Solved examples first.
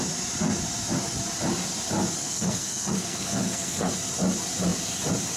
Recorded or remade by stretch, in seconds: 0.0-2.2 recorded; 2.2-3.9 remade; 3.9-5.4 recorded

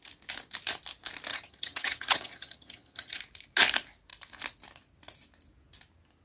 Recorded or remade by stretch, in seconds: 0.0-1.3 recorded; 1.3-3.2 remade; 3.2-6.2 recorded

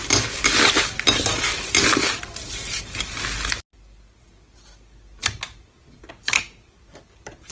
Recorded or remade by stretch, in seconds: 0.0-7.5 recorded